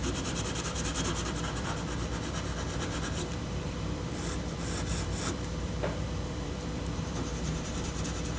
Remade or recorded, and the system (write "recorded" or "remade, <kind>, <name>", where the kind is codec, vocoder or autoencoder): remade, vocoder, BigVGAN v2